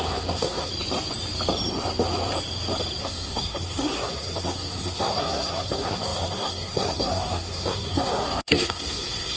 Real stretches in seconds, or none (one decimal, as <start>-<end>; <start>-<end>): 0.7-3.0